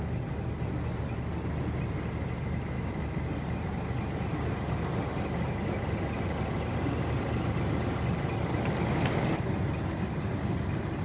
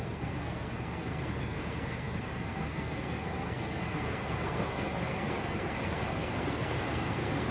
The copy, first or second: second